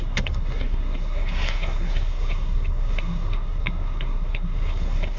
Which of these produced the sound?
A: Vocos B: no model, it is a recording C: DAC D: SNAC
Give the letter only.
D